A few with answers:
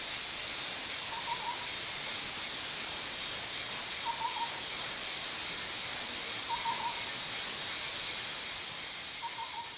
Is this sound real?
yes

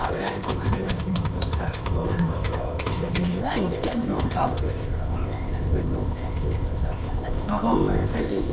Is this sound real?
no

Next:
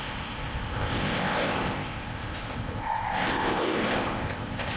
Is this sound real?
no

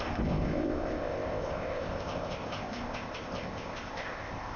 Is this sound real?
no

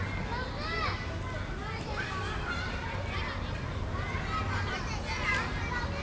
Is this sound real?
yes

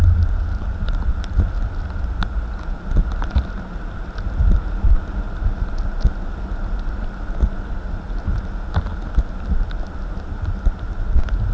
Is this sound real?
yes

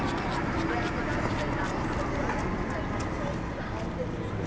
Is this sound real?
yes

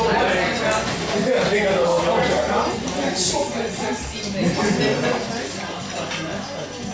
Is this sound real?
yes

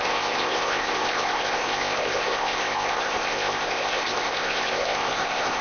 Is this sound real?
no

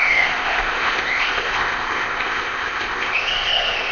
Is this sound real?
no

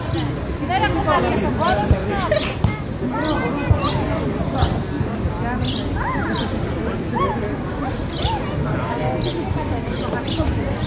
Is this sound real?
yes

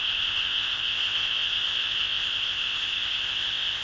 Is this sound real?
no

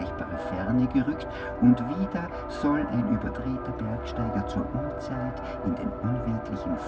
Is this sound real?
yes